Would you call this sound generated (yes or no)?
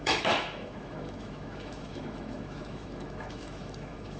yes